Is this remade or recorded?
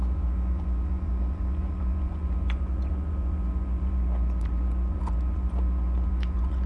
remade